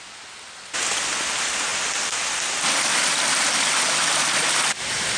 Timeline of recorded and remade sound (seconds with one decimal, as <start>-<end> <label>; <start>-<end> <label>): 0.0-5.2 recorded